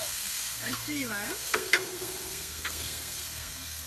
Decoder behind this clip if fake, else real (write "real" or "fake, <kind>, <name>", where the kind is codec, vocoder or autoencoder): fake, codec, SNAC